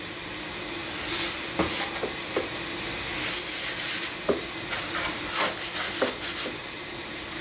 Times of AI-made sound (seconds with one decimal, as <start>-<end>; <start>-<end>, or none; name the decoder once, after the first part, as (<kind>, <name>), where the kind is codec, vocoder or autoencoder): 0.8-1.4 (vocoder, BigVGAN v2); 6.6-7.4